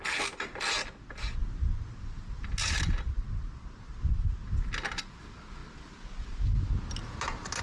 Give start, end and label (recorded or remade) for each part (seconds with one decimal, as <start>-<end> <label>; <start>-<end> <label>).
0.0-1.4 recorded; 1.4-3.1 remade; 3.1-7.6 recorded